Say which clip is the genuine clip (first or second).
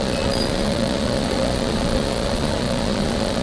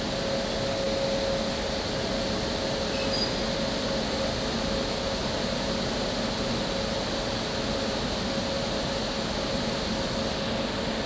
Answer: second